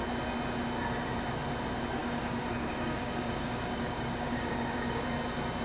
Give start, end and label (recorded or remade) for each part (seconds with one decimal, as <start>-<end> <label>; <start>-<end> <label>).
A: 0.0-2.0 recorded; 2.0-5.0 remade; 5.0-5.6 recorded

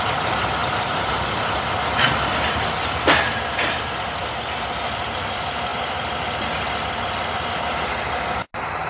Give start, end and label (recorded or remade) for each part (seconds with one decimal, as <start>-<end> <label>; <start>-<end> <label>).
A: 0.0-8.9 recorded

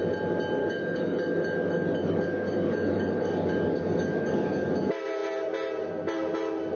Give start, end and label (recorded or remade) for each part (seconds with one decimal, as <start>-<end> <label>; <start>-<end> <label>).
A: 0.0-0.6 recorded; 0.6-4.7 remade; 4.7-6.8 recorded

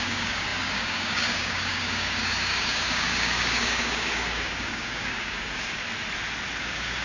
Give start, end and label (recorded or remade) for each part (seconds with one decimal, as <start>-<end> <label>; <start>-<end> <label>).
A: 0.0-5.8 remade; 5.8-6.6 recorded; 6.6-7.0 remade

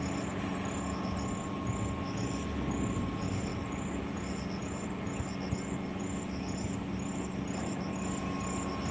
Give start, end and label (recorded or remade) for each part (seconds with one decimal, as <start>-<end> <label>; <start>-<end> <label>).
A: 0.0-8.9 recorded